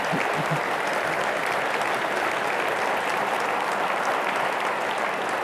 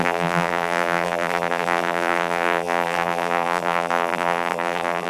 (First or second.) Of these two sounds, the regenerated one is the second